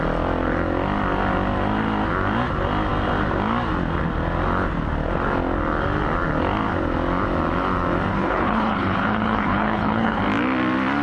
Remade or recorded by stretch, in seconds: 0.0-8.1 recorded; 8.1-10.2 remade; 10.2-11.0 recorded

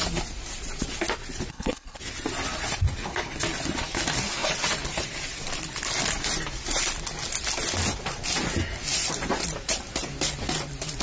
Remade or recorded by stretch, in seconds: 0.0-1.5 recorded; 1.5-2.0 remade; 2.0-11.0 recorded

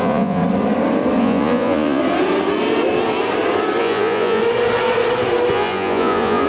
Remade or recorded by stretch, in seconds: 0.0-0.4 remade; 0.4-1.2 recorded; 1.2-2.0 remade; 2.0-3.8 recorded; 3.8-4.4 remade; 4.4-5.5 recorded; 5.5-6.5 remade

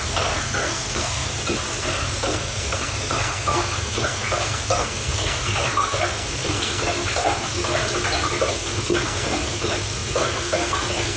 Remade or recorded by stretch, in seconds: 0.0-1.3 remade; 1.3-1.8 recorded; 1.8-7.8 remade; 7.8-8.5 recorded; 8.5-11.2 remade

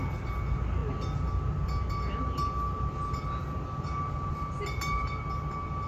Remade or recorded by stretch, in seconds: 0.0-5.9 recorded

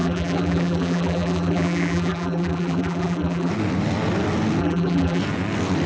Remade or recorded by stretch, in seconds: 0.0-3.5 remade; 3.5-4.6 recorded; 4.6-5.2 remade; 5.2-5.9 recorded

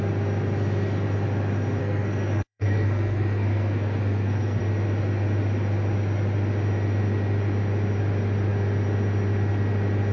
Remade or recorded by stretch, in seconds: 0.0-1.8 recorded; 1.8-4.6 remade; 4.6-10.1 recorded